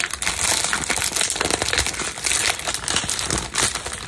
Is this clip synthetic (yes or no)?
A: no